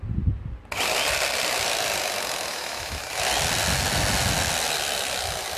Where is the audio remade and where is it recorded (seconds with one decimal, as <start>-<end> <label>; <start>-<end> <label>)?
0.0-2.5 recorded; 2.5-3.0 remade; 3.0-5.6 recorded